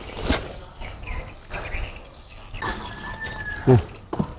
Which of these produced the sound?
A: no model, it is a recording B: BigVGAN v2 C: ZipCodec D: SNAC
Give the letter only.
A